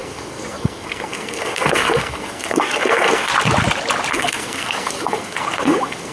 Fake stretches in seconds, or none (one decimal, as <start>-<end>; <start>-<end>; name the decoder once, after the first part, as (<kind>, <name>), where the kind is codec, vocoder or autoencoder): 0.0-3.3 (codec, SNAC); 4.1-6.1